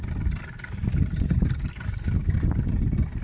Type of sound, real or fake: real